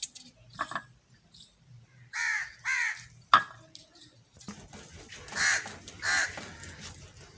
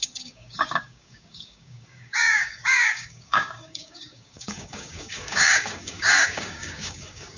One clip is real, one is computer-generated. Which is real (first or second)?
first